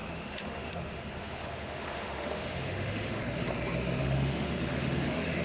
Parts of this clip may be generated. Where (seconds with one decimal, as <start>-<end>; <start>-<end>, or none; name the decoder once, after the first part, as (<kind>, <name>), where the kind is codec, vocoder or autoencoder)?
0.0-3.2 (autoencoder, DAC-VAE); 4.0-5.4